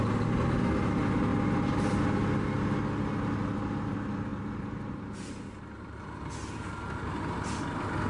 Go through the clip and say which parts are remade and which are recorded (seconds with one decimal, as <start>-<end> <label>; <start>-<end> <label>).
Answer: 0.0-1.3 recorded; 1.3-1.9 remade; 1.9-4.3 recorded; 4.3-6.0 remade; 6.0-8.1 recorded